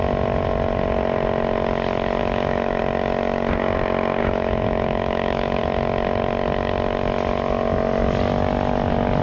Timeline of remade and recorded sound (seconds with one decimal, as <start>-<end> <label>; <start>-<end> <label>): 0.0-2.2 recorded; 2.2-2.8 remade; 2.8-4.2 recorded; 4.2-5.6 remade; 5.6-9.2 recorded